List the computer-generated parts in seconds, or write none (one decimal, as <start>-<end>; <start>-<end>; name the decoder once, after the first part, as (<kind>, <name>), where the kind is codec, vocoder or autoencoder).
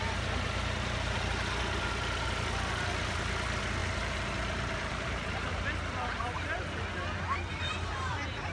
3.8-6.3 (vocoder, BigVGAN v2)